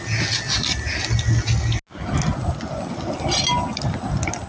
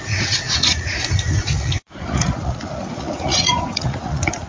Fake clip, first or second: second